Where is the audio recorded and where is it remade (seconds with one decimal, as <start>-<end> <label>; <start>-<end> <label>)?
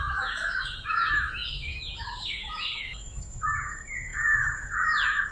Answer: 0.0-5.3 remade